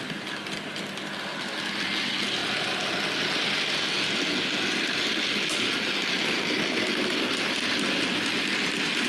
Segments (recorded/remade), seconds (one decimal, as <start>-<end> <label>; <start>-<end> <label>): 0.0-9.1 recorded